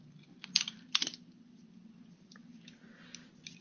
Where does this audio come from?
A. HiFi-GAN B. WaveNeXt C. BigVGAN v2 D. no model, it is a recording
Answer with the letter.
D